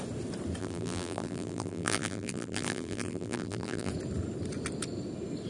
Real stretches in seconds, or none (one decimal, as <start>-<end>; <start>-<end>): 0.0-0.6; 3.9-5.5